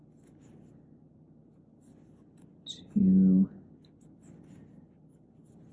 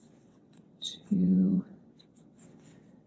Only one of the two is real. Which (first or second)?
first